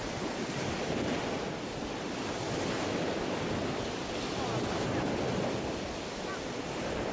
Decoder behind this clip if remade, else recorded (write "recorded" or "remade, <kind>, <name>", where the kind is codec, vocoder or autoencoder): recorded